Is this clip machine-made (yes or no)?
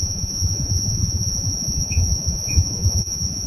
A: yes